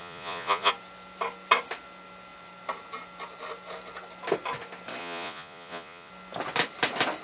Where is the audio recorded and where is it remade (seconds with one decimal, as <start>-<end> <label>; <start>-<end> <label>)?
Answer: 0.0-0.7 remade; 0.7-5.0 recorded; 5.0-6.1 remade; 6.1-7.2 recorded